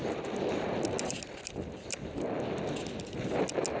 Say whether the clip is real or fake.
real